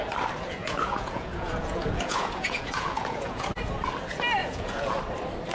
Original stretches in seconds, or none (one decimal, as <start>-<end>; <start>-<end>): 0.0-0.6; 3.5-4.4; 5.0-5.5